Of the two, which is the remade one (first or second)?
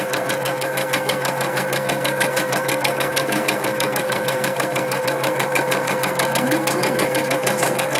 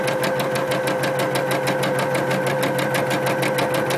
first